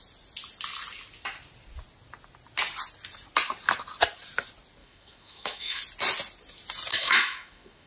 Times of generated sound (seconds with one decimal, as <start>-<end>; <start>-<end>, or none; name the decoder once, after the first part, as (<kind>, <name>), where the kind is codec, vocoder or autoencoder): 4.8-5.8 (autoencoder, DAC-VAE); 6.9-7.9